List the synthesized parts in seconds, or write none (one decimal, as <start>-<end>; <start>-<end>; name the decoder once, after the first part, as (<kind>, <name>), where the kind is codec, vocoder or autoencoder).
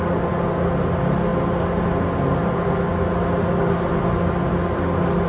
none